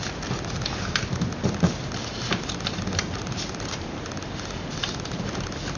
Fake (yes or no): no